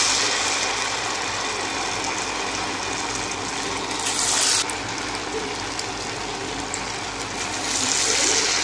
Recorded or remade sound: recorded